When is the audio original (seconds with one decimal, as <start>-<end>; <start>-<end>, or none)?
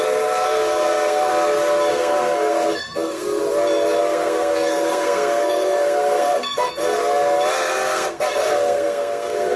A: 1.3-1.9; 3.4-4.0; 7.0-7.5